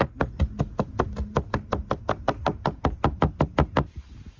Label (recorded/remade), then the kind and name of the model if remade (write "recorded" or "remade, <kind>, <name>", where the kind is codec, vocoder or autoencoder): recorded